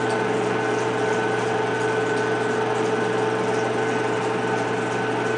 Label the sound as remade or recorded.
recorded